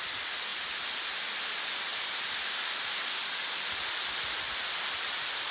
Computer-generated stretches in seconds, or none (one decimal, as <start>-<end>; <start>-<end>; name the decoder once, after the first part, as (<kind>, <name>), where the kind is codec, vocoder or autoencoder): 1.9-2.8 (vocoder, BigVGAN v2); 3.2-5.5